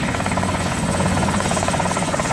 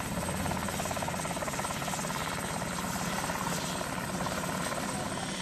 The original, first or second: second